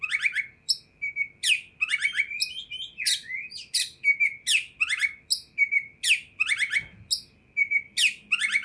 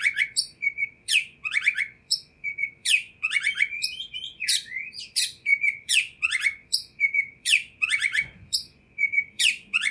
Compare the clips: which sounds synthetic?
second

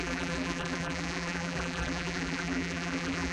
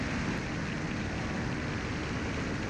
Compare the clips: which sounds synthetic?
first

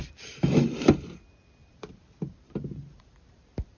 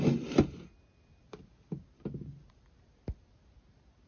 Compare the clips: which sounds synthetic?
first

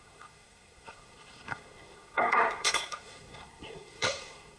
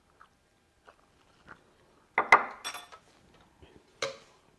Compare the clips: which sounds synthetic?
first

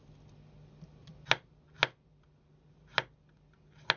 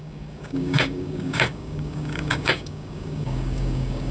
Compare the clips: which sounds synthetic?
second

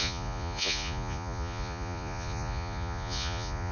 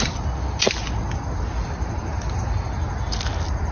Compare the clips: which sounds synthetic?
first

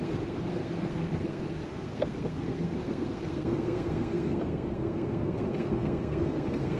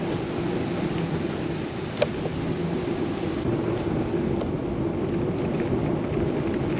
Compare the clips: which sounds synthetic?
first